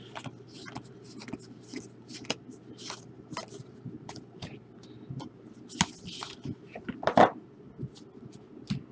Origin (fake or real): real